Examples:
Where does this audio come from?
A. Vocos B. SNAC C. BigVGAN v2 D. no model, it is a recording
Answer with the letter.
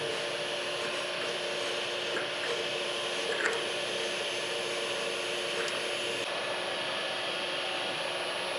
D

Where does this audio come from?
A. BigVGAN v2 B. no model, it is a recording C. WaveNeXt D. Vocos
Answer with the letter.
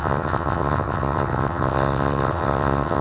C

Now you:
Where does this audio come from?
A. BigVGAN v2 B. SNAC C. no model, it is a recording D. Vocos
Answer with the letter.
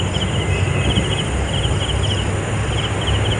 C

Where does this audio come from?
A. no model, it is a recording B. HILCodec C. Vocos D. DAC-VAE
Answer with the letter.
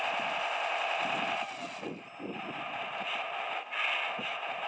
A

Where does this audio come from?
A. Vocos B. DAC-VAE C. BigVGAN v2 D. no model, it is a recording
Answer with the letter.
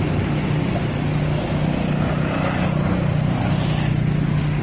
D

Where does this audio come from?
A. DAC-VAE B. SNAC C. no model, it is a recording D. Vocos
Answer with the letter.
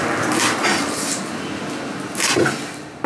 C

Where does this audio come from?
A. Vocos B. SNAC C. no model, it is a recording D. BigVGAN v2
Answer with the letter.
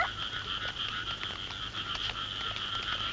C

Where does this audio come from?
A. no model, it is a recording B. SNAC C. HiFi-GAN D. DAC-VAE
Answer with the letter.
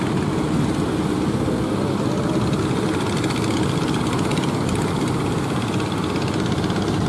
A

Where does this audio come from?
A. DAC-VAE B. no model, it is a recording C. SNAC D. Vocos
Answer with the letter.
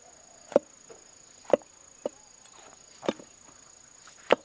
B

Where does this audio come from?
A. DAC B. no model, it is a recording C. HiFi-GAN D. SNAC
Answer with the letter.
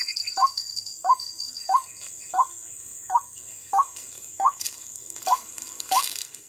D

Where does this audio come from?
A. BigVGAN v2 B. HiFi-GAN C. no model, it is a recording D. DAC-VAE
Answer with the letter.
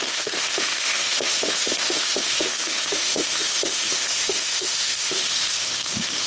D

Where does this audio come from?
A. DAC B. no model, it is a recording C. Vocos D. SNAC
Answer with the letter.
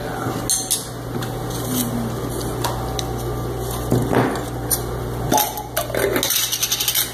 B